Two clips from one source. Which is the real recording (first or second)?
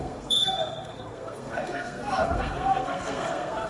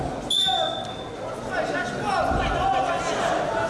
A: second